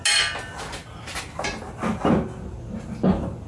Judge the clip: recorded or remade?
recorded